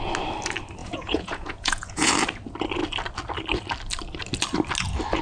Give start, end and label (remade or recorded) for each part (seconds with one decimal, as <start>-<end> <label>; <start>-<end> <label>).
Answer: 0.0-0.8 recorded; 0.8-2.1 remade; 2.1-5.2 recorded